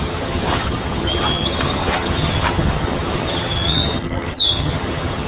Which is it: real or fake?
fake